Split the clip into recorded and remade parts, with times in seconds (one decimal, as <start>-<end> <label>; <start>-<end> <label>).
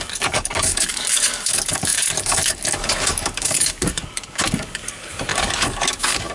0.0-6.3 remade